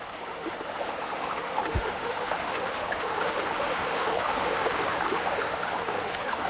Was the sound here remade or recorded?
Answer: remade